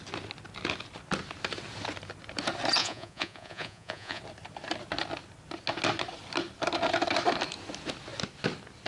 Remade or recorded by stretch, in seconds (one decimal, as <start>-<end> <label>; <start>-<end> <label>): 0.0-2.8 recorded; 2.8-4.2 remade; 4.2-8.9 recorded